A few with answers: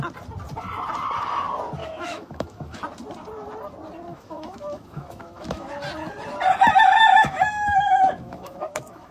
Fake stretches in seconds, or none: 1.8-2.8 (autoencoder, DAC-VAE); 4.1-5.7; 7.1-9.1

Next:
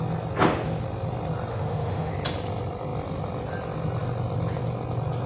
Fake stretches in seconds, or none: 1.5-2.1 (autoencoder, DAC-VAE)

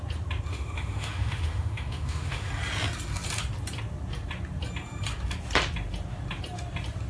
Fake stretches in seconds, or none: 0.5-2.5 (autoencoder, DAC-VAE)

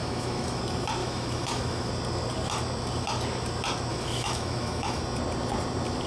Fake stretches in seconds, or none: 0.0-0.6 (autoencoder, DAC-VAE); 1.0-1.9; 3.9-5.0